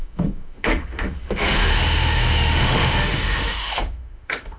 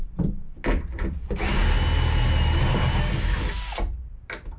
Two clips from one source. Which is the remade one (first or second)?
first